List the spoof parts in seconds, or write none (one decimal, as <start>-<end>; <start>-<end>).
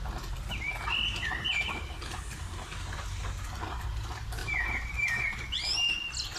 none